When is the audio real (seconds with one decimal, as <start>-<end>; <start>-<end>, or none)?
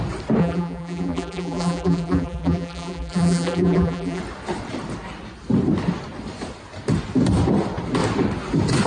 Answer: 0.0-0.4; 4.2-8.9